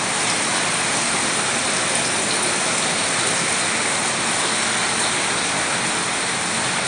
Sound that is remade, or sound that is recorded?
recorded